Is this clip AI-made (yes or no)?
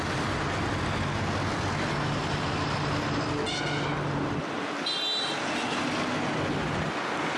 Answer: no